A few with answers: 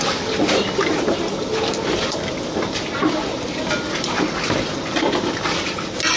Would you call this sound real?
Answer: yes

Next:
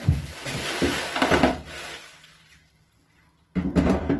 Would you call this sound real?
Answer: yes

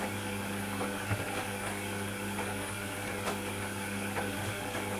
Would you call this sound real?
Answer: no